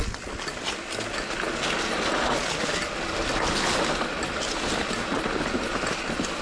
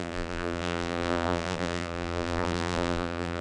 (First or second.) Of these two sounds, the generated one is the second